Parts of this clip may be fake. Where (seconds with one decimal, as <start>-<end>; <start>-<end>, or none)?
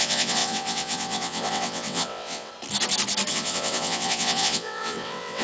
0.0-2.5; 3.3-5.4